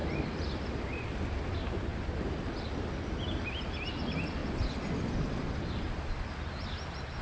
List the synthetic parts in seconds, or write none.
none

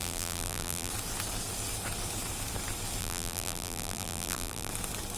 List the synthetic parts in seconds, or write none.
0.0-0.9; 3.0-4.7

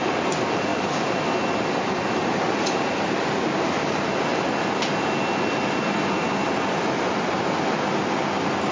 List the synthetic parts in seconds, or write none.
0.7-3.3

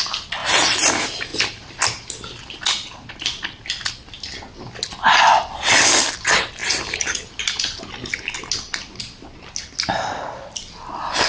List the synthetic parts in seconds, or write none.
0.4-0.9; 1.3-3.1; 6.6-7.4